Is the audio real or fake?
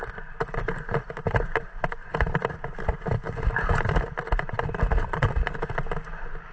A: real